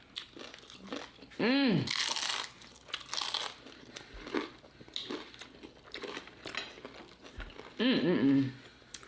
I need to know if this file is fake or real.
real